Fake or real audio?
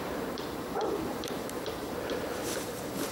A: fake